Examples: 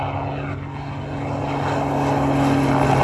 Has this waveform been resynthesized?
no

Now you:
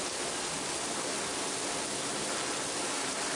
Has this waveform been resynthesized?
no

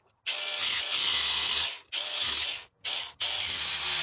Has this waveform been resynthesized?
no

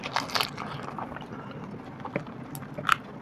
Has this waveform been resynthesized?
no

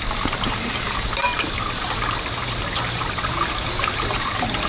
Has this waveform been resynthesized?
no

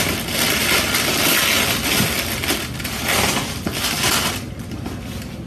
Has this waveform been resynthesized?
no